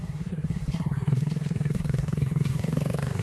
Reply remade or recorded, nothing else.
remade